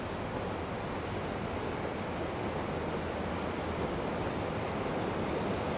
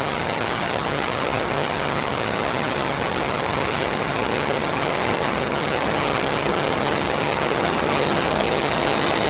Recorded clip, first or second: first